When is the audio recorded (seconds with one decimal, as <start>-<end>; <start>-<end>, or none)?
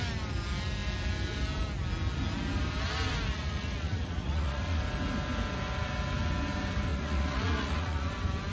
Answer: 0.0-3.3; 4.8-6.9; 8.1-8.5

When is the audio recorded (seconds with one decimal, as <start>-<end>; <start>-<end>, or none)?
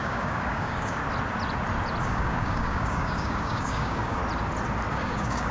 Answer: 1.0-2.0; 4.2-4.9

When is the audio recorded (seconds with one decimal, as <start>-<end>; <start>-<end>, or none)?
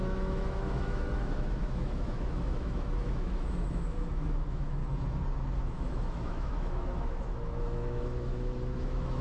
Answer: 4.8-5.6